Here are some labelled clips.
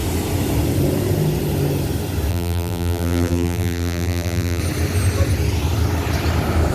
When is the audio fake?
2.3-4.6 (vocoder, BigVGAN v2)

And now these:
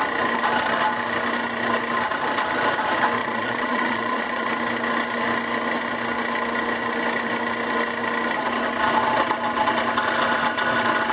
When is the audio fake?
3.2-4.5 (vocoder, Vocos)

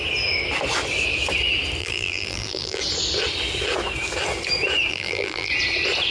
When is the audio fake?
1.8-2.8 (vocoder, BigVGAN v2); 4.9-5.5